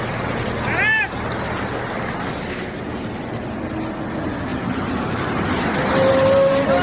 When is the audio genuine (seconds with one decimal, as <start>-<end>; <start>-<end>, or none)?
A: 0.0-6.8